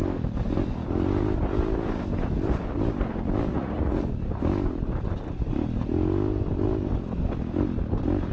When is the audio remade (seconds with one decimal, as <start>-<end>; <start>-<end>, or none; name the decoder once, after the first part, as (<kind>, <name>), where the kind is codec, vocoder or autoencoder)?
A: 3.5-4.0 (vocoder, Vocos)